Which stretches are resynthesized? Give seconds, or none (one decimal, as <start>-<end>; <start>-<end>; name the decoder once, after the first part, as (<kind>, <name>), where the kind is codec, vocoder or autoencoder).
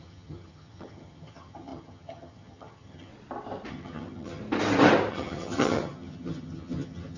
0.0-3.1 (vocoder, HiFi-GAN); 3.7-4.4; 5.1-7.2